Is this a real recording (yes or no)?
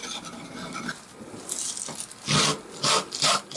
yes